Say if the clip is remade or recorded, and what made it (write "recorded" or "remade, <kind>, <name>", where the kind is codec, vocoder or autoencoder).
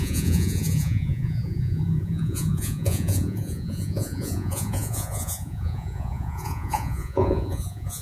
remade, vocoder, Vocos